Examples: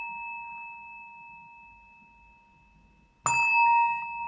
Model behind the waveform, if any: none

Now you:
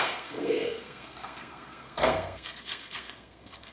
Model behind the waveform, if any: codec, SNAC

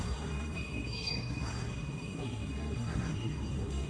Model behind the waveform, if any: codec, SNAC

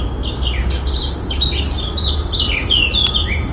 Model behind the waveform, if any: none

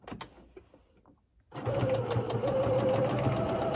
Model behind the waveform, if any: none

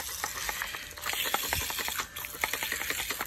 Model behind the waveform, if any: none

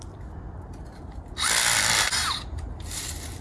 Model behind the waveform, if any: none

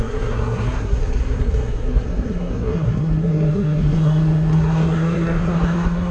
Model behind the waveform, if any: codec, SNAC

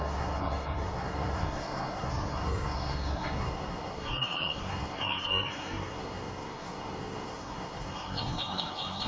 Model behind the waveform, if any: codec, SNAC